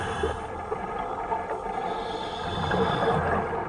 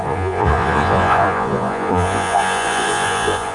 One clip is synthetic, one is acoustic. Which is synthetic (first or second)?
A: second